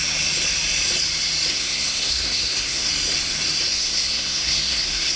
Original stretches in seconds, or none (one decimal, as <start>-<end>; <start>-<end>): 0.0-1.5; 2.9-3.7